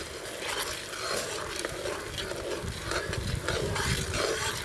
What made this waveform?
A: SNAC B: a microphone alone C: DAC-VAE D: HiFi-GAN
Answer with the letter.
B